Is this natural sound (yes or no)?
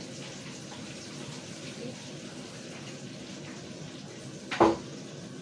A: yes